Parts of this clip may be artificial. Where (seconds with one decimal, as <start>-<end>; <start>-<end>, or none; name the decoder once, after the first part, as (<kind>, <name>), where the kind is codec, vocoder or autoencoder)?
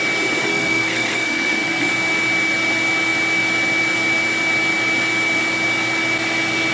0.4-1.9 (codec, SNAC)